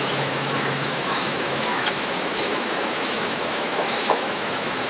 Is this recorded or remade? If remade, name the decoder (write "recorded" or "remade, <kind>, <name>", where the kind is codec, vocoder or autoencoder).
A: remade, autoencoder, DAC-VAE